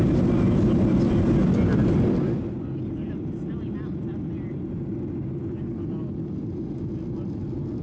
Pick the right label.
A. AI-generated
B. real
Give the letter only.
B